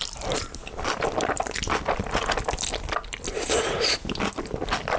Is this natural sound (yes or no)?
yes